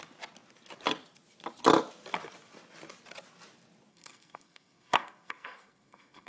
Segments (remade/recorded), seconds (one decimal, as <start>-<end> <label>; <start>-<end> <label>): 0.0-3.9 recorded; 3.9-6.3 remade

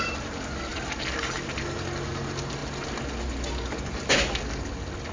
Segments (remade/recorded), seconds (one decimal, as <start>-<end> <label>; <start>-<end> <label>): 0.0-5.1 recorded